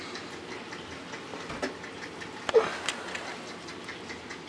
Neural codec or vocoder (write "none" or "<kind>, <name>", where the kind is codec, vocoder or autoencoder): none